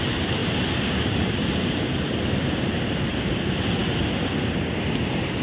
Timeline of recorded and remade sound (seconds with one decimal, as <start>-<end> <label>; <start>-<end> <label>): 0.0-5.4 recorded